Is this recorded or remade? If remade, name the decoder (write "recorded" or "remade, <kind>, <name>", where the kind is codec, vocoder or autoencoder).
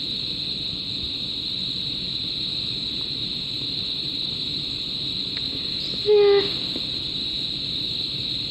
recorded